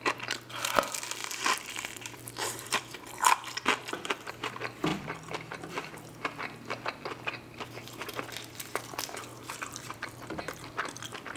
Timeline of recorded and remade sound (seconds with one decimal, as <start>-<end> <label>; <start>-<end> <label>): 0.0-1.2 recorded; 1.2-4.3 remade; 4.3-9.3 recorded; 9.3-10.1 remade; 10.1-11.4 recorded